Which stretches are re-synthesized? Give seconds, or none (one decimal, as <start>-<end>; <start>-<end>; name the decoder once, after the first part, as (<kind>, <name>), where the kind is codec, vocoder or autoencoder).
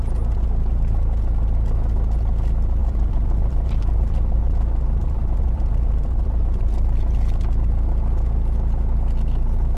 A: 2.8-7.4 (vocoder, BigVGAN v2)